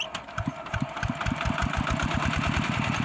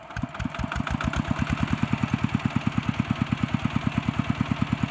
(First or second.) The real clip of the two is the second